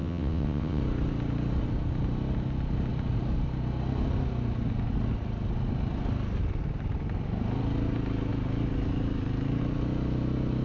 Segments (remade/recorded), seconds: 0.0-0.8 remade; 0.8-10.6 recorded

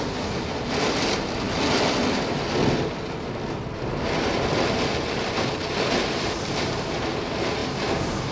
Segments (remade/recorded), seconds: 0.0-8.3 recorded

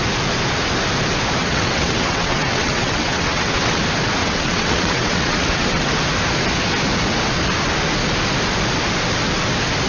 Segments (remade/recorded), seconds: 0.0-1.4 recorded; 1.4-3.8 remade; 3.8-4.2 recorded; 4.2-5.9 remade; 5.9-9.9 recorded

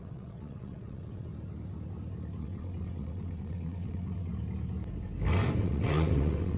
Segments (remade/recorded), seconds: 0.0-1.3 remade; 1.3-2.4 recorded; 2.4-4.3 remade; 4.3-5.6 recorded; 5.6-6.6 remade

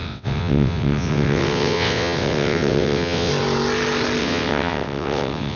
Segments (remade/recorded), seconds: 0.0-3.3 remade; 3.3-4.2 recorded; 4.2-5.6 remade

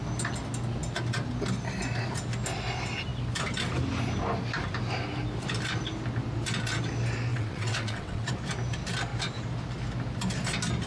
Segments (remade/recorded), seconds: 0.0-7.3 recorded; 7.3-8.3 remade; 8.3-10.9 recorded

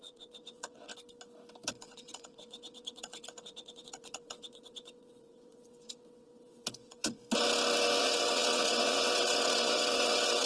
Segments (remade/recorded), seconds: 0.0-0.9 remade; 0.9-1.7 recorded; 1.7-7.2 remade; 7.2-8.0 recorded; 8.0-10.5 remade